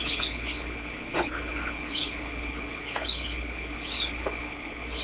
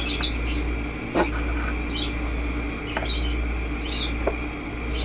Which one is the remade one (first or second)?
first